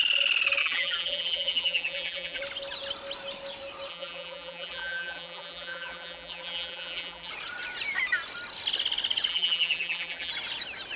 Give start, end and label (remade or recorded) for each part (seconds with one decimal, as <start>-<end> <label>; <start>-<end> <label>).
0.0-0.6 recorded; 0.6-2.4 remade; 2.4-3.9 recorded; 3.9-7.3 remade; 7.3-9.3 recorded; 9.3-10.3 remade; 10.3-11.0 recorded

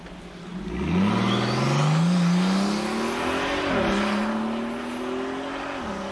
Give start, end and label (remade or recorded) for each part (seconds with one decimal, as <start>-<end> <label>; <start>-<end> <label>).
0.0-6.1 recorded

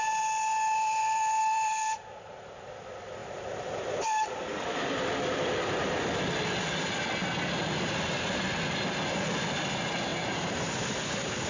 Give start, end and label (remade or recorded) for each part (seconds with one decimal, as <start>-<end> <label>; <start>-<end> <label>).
0.0-0.5 recorded; 0.5-2.5 remade; 2.5-3.2 recorded; 3.2-4.9 remade; 4.9-10.1 recorded; 10.1-10.8 remade; 10.8-11.5 recorded